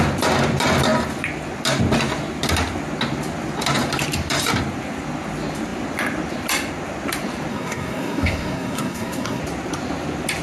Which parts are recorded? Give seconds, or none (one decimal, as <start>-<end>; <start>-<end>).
0.0-7.5; 9.4-10.4